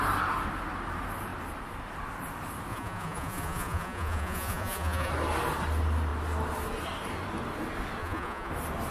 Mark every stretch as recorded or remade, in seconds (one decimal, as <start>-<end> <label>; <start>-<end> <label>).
0.0-2.7 recorded; 2.7-5.1 remade; 5.1-8.0 recorded; 8.0-8.5 remade; 8.5-8.9 recorded